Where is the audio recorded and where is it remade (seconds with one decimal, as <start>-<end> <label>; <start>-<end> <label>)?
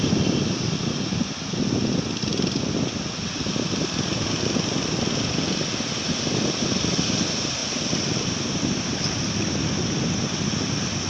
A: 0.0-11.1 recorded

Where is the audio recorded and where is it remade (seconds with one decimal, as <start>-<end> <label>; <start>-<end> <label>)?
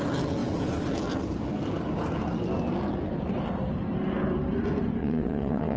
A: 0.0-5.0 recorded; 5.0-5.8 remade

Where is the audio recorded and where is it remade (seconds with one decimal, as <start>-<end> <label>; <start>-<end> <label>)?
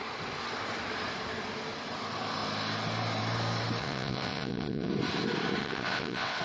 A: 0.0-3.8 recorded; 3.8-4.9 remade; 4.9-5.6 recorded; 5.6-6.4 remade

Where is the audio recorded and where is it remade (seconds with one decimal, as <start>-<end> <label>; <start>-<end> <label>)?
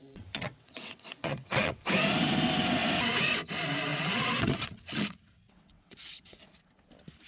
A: 0.0-1.8 remade; 1.8-3.9 recorded; 3.9-6.4 remade; 6.4-7.3 recorded